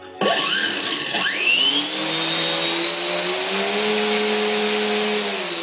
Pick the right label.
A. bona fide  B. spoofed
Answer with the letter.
A